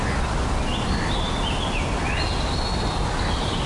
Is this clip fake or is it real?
real